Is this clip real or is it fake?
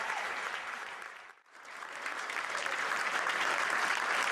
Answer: fake